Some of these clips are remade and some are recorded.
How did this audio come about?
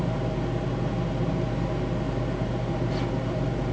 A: recorded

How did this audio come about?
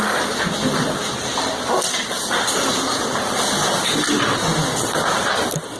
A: recorded